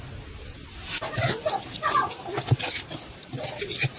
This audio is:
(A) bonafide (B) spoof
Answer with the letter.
A